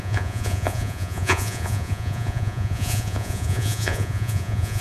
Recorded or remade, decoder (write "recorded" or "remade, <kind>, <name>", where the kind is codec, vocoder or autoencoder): remade, vocoder, Vocos